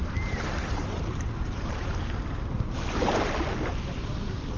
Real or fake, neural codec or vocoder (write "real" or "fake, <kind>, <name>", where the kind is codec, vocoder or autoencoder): fake, vocoder, BigVGAN v2